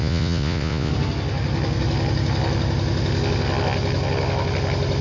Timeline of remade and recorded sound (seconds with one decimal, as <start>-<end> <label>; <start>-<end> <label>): 0.0-0.9 remade; 0.9-5.0 recorded